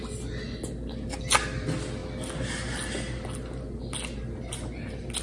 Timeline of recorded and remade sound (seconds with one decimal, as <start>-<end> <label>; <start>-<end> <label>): 0.0-5.2 recorded